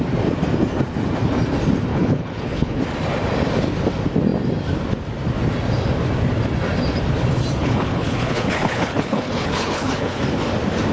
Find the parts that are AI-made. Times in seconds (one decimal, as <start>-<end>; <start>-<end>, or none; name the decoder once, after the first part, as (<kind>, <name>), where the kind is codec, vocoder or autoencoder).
1.9-2.8 (codec, HILCodec); 7.6-10.2